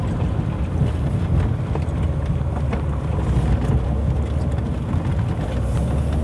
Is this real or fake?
real